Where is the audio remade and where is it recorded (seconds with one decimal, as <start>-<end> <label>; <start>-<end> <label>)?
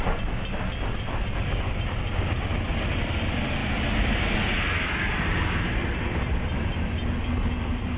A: 0.0-8.0 recorded